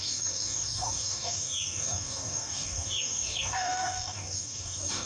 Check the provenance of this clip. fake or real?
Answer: fake